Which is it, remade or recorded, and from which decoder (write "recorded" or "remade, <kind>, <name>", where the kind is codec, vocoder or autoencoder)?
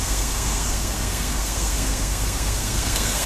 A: remade, codec, SNAC